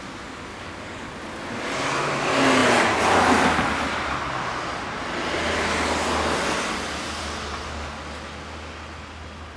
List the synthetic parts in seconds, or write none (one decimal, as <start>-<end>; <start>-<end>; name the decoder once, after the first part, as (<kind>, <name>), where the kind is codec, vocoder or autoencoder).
0.5-1.1 (codec, DAC)